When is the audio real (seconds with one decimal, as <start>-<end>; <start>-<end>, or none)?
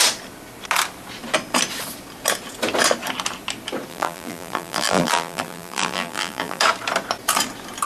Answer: 0.0-3.9; 6.6-7.9